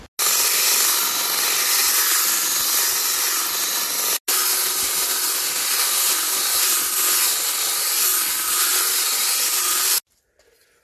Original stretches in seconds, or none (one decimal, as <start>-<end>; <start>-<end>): 0.0-10.8